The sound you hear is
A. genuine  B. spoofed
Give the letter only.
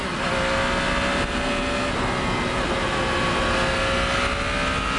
A